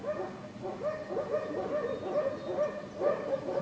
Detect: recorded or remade recorded